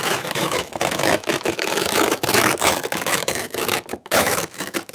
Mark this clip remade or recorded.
remade